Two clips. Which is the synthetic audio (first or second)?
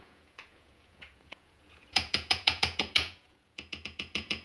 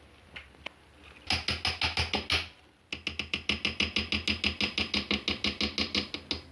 first